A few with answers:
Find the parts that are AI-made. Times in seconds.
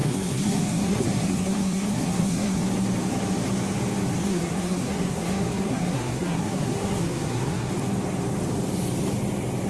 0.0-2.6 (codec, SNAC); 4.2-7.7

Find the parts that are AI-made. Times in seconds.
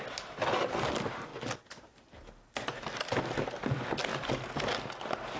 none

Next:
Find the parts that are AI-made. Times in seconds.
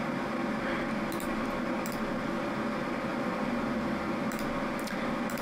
3.1-4.3 (vocoder, BigVGAN v2)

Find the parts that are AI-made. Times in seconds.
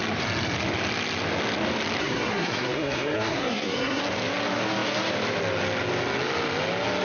2.0-4.0 (codec, SNAC)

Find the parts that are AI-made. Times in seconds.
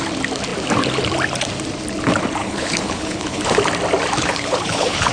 2.4-3.4 (codec, HILCodec); 4.2-5.1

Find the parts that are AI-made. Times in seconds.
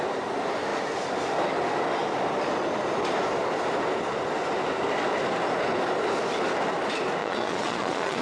7.2-8.2 (vocoder, Vocos)